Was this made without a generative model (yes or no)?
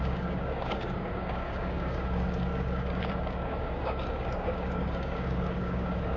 no